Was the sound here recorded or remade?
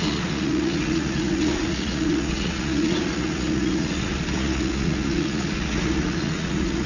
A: remade